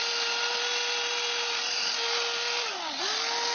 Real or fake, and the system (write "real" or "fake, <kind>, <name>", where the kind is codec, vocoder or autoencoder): real